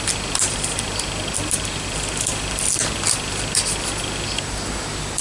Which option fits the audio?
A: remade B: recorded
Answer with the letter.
B